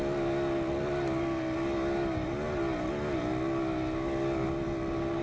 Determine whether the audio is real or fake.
real